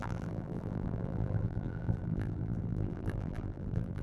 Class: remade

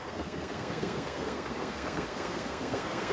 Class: remade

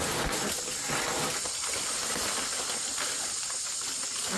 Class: recorded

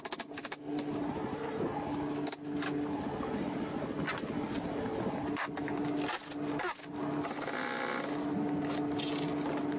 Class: recorded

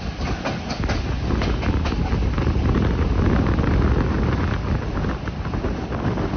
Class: recorded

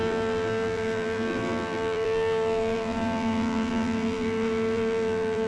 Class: remade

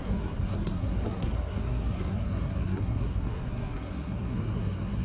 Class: remade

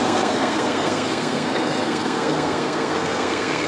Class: remade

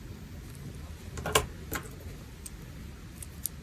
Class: recorded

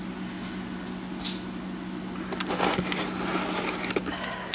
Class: recorded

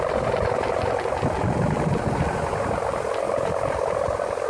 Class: recorded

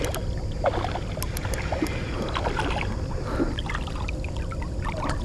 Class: recorded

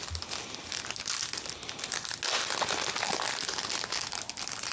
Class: recorded